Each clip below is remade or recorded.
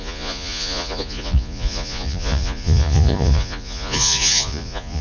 remade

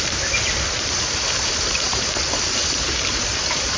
remade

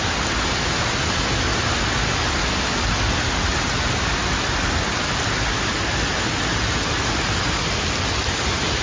recorded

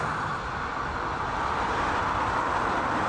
recorded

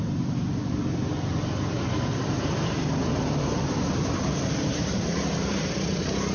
remade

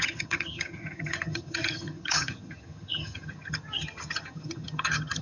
remade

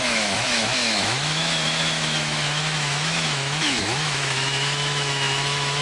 remade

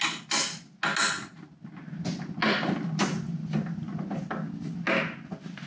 recorded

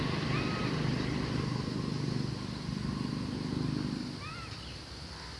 recorded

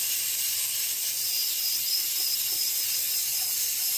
recorded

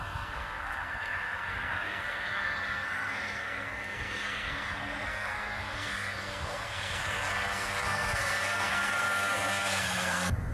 remade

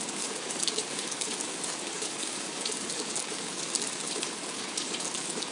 remade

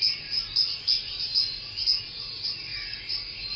recorded